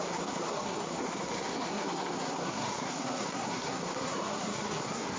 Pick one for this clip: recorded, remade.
remade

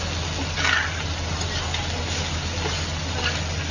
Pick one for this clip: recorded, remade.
recorded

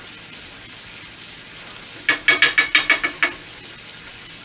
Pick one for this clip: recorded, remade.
recorded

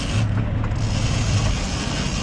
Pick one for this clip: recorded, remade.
recorded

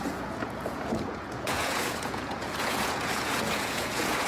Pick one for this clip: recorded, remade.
remade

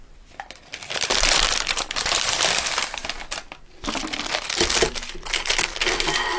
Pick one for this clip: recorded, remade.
recorded